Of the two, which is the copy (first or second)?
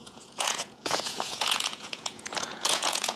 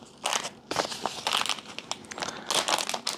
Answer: first